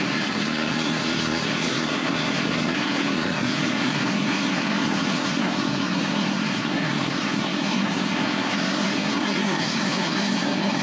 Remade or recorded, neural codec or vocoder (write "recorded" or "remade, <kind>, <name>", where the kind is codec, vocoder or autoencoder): remade, codec, SNAC